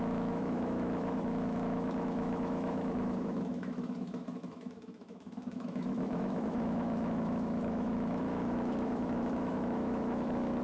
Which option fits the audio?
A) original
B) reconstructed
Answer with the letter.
B